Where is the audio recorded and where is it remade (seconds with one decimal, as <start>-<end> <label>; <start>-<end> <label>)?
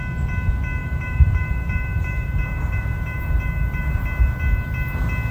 0.0-0.8 recorded; 0.8-4.0 remade; 4.0-5.3 recorded